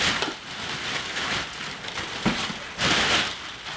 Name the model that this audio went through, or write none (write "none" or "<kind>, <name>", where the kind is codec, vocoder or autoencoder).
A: none